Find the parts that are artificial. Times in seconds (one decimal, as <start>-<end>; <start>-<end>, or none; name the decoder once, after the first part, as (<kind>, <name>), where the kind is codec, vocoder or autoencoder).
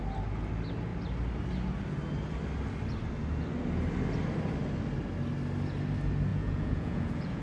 6.3-7.4 (vocoder, Vocos)